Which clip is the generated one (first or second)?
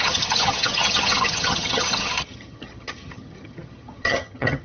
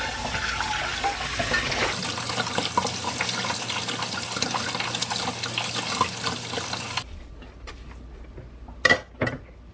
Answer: first